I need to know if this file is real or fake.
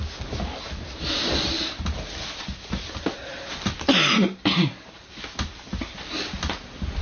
real